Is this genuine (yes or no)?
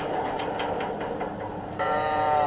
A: no